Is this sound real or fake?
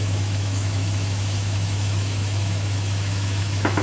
fake